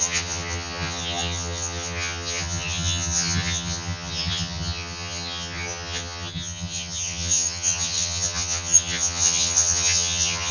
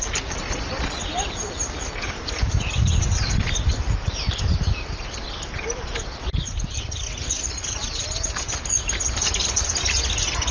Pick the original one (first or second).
second